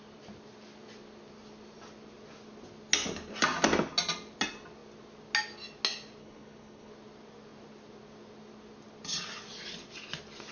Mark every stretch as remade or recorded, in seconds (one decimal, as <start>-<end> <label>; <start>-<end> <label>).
0.0-6.2 recorded; 6.2-6.9 remade; 6.9-10.5 recorded